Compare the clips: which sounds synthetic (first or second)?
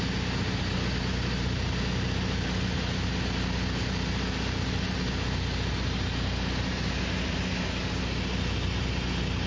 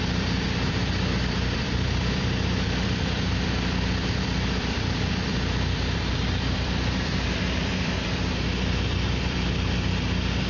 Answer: second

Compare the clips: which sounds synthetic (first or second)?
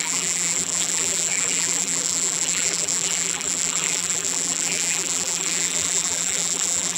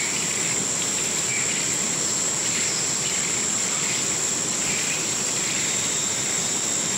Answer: first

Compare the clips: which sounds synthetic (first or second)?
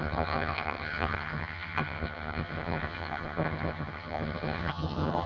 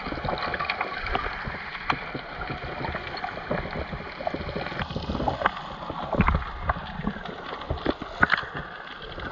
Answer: first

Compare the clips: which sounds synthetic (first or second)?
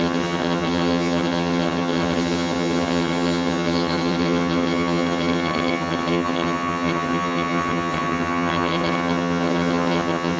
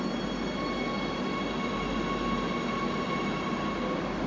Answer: first